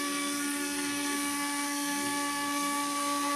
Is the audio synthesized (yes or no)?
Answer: yes